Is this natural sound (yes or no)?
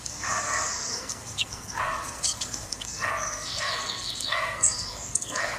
no